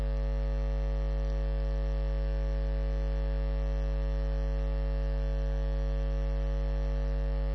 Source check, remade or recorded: recorded